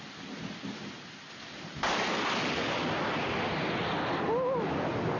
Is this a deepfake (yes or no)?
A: no